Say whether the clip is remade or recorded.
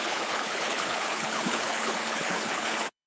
remade